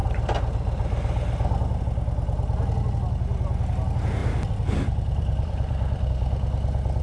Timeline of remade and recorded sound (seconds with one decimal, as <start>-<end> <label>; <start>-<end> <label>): 0.0-4.2 recorded; 4.2-6.1 remade; 6.1-7.0 recorded